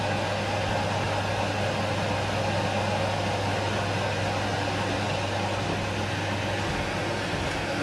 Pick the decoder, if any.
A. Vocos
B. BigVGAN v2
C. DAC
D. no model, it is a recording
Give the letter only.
D